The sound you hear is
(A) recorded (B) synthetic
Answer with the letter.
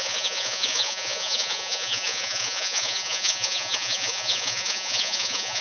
B